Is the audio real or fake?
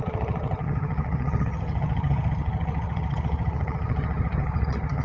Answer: fake